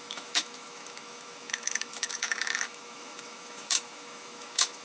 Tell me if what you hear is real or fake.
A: fake